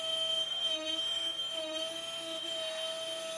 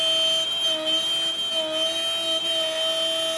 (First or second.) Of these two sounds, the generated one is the first